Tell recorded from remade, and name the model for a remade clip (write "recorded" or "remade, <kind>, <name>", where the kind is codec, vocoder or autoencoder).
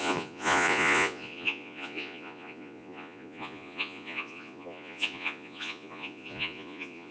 remade, vocoder, Vocos